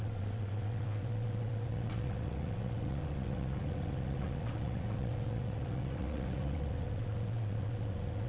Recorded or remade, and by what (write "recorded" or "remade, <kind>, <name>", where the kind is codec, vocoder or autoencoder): remade, vocoder, WaveNeXt